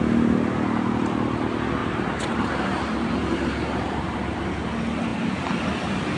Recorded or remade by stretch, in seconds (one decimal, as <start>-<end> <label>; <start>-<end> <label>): 0.0-1.8 recorded; 1.8-4.6 remade; 4.6-6.2 recorded